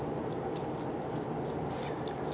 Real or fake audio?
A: real